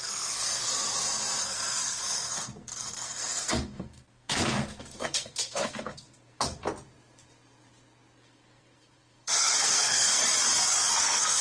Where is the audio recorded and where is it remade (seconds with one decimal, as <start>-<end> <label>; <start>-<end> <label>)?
0.0-0.7 remade; 0.7-1.4 recorded; 1.4-6.6 remade; 6.6-8.2 recorded; 8.2-10.2 remade; 10.2-11.0 recorded; 11.0-11.4 remade